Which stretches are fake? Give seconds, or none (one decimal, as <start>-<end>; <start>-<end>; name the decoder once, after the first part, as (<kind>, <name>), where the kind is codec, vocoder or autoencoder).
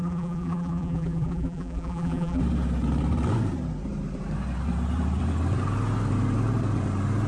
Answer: 0.0-2.4 (vocoder, BigVGAN v2)